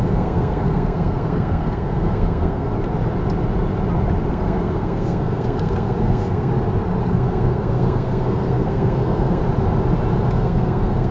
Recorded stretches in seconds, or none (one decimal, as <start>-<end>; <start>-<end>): 2.7-4.3; 6.5-7.0; 9.4-10.3